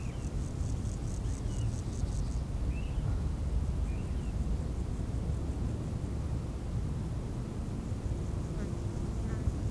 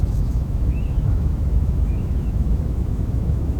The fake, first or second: second